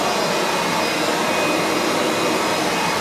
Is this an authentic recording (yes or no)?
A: yes